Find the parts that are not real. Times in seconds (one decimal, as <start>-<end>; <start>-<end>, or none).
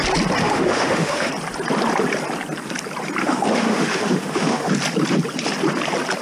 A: 0.4-1.3; 3.2-4.7